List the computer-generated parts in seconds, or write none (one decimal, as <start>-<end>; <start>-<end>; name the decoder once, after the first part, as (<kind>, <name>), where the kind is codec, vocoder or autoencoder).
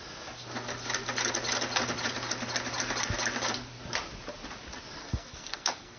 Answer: 5.0-6.0 (codec, SNAC)